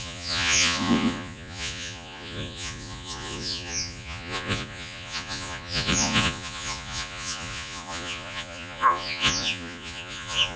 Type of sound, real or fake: fake